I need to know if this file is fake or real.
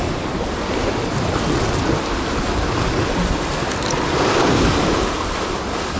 real